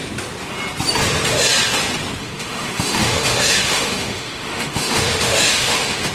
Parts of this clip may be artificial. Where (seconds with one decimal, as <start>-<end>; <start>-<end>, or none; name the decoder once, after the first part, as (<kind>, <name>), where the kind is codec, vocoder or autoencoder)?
2.2-6.1 (autoencoder, DAC-VAE)